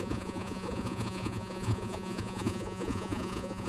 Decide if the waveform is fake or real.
fake